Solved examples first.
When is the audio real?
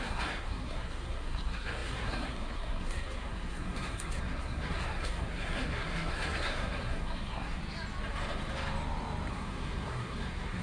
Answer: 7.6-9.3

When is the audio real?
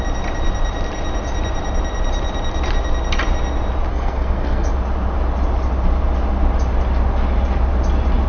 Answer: 0.0-3.9; 4.7-8.3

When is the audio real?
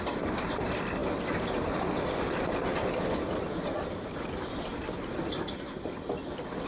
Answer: 0.0-6.7